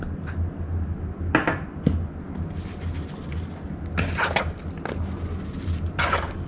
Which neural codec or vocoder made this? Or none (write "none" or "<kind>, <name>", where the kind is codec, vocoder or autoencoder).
none